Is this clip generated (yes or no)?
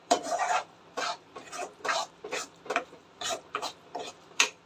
yes